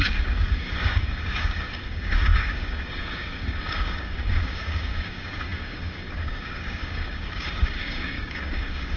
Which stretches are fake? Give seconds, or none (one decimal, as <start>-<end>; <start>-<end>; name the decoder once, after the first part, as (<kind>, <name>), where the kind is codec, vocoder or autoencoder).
0.0-9.0 (codec, DAC)